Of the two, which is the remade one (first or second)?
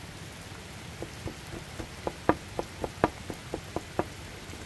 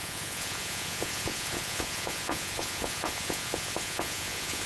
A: second